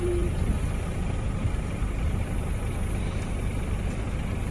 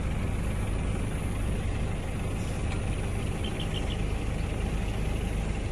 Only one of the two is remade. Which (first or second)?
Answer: first